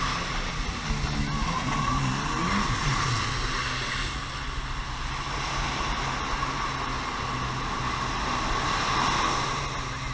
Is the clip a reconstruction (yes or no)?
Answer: no